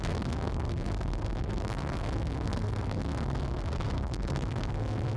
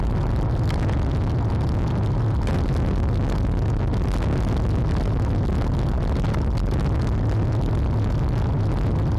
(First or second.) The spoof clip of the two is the first